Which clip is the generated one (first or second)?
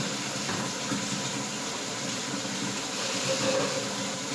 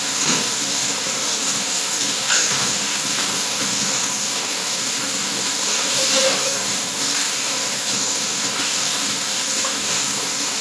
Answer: second